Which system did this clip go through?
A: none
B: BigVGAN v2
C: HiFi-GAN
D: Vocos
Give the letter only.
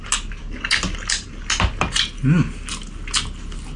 A